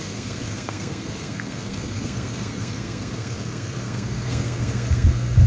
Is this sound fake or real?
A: fake